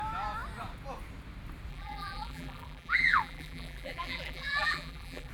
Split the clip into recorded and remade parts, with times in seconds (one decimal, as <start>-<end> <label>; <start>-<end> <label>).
0.0-1.7 recorded; 1.7-5.3 remade